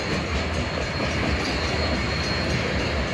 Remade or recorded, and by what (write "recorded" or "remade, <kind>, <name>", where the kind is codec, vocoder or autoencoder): recorded